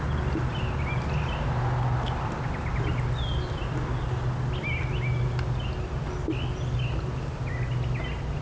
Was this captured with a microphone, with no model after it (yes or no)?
yes